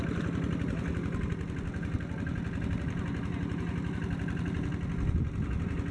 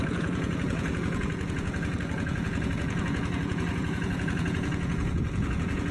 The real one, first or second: first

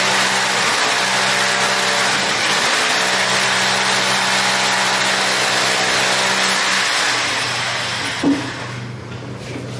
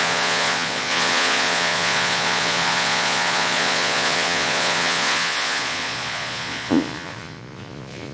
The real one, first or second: first